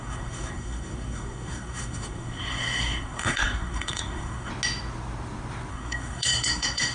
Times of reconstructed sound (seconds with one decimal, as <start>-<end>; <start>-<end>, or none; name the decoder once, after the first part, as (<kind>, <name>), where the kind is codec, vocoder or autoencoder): 0.0-4.5 (codec, SNAC); 5.7-6.9